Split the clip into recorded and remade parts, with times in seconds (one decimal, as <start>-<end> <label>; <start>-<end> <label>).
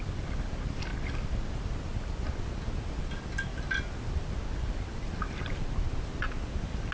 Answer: 0.0-6.9 recorded